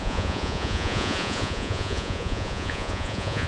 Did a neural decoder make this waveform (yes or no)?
yes